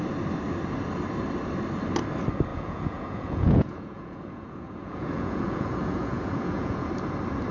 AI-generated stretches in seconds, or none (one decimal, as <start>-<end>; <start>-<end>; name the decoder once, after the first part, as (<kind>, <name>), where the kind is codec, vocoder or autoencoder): 2.5-6.9 (vocoder, Vocos)